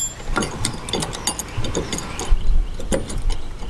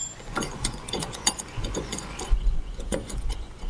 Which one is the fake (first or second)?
second